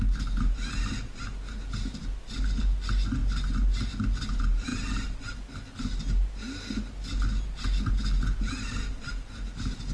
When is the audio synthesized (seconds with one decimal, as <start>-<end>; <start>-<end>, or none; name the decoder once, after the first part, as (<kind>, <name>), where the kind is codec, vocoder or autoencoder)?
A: none